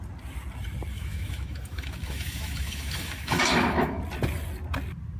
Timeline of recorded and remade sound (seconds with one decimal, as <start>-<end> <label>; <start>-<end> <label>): 0.0-0.9 recorded; 0.9-4.0 remade; 4.0-5.2 recorded